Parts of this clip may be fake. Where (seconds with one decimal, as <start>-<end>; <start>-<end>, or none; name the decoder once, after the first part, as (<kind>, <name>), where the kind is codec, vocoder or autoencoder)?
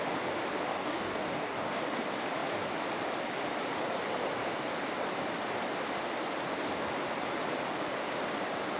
0.7-1.8 (codec, DAC)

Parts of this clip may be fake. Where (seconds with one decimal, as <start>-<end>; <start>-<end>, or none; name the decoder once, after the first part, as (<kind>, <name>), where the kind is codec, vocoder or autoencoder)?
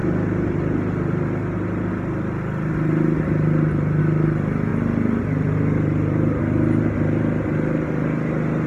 4.7-6.4 (vocoder, BigVGAN v2)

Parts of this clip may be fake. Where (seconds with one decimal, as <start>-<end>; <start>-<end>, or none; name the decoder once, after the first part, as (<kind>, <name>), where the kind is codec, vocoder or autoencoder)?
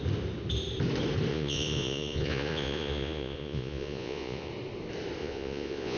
1.3-4.5 (vocoder, Vocos); 5.2-6.0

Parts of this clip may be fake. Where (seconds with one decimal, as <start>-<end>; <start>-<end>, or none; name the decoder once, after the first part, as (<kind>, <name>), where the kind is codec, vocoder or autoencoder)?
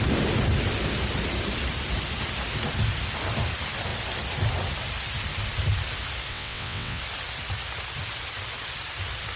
6.3-7.0 (vocoder, WaveNeXt)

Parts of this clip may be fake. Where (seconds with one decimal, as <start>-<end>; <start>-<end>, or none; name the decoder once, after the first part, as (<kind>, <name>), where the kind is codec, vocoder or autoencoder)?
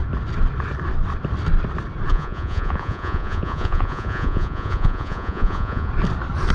2.1-5.9 (vocoder, Vocos)